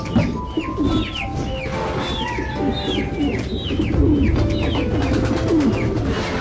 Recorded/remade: recorded